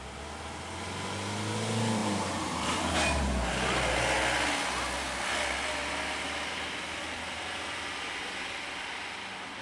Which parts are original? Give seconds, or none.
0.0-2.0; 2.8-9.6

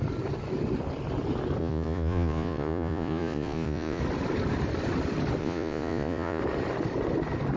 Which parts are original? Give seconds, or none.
0.0-1.6; 4.0-5.4; 6.4-7.6

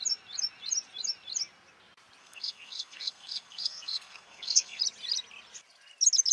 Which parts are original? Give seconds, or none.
0.0-2.2; 4.8-6.3